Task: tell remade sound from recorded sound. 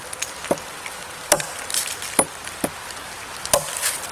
recorded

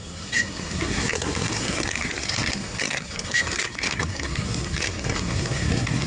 remade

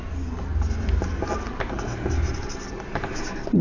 recorded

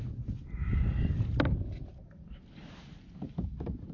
recorded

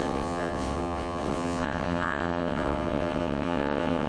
remade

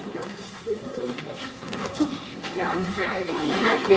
remade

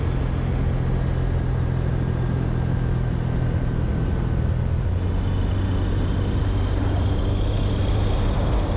recorded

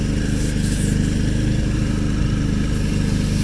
recorded